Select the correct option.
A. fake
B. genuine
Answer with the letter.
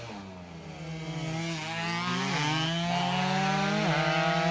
B